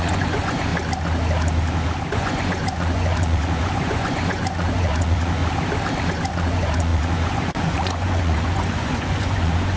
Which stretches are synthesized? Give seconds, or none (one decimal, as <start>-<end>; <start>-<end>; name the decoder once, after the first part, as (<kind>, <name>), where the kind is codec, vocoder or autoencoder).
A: 0.0-0.7 (vocoder, Vocos); 2.1-5.4; 6.1-9.8

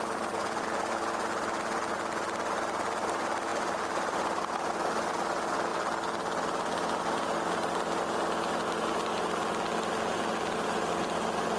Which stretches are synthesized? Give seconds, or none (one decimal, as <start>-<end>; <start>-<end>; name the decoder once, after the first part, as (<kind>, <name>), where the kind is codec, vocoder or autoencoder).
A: none

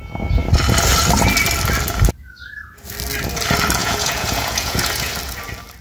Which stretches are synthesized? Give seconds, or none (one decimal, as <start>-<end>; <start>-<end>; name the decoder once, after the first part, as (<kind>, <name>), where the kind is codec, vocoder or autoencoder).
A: 3.8-5.1 (vocoder, Vocos)